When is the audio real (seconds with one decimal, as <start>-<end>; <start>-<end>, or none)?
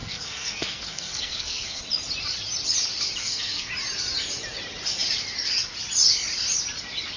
1.8-3.2; 3.7-7.2